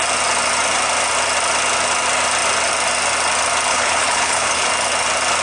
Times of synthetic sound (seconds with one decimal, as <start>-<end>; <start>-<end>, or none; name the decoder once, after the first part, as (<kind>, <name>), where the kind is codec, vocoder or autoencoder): 3.7-4.7 (codec, HILCodec)